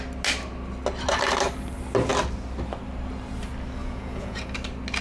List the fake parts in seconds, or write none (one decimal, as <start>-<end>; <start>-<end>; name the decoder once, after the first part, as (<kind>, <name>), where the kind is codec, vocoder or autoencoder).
3.8-4.4 (vocoder, Vocos)